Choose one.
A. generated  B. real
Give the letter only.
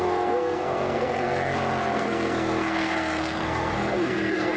A